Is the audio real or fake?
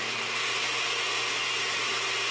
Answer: real